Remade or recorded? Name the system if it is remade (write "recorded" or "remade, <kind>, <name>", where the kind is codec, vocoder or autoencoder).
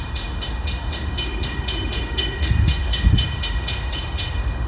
remade, autoencoder, DAC-VAE